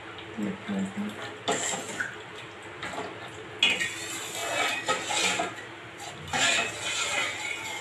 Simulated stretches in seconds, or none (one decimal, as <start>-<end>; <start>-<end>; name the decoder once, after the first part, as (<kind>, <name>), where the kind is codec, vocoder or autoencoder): none